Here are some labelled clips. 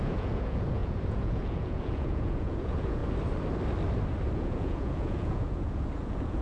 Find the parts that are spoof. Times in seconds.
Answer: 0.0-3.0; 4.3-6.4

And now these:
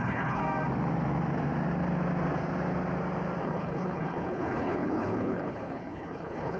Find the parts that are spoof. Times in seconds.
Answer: 0.0-0.4; 3.4-6.6

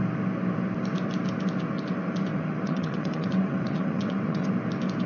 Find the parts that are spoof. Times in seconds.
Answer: 2.3-4.5

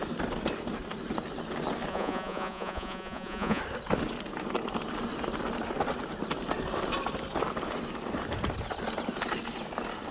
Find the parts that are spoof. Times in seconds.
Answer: 1.9-3.6

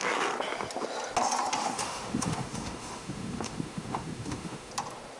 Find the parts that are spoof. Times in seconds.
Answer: 1.6-4.7